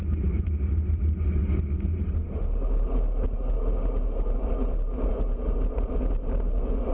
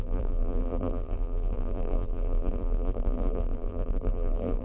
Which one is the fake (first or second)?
second